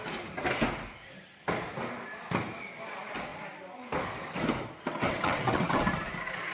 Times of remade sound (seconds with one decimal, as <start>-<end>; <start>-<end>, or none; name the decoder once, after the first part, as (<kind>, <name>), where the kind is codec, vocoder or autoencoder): 4.9-5.9 (vocoder, WaveNeXt)